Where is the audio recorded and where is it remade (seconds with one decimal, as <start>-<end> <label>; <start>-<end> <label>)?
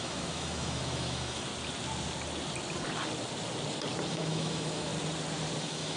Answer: 0.0-1.5 remade; 1.5-4.1 recorded; 4.1-4.9 remade; 4.9-5.6 recorded; 5.6-6.0 remade